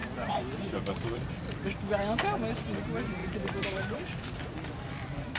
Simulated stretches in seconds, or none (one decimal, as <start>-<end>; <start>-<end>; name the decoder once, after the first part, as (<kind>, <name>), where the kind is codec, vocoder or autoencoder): 0.0-0.6 (vocoder, BigVGAN v2); 3.2-5.4